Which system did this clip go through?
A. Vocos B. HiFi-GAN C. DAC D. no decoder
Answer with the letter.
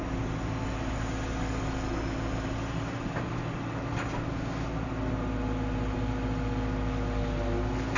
D